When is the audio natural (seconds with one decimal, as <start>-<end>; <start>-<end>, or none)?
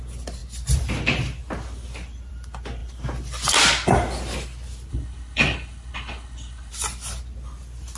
0.0-4.9; 6.7-8.0